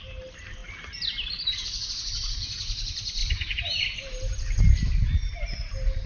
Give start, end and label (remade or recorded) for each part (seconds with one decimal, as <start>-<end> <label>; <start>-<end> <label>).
0.0-3.2 recorded; 3.2-4.6 remade; 4.6-6.1 recorded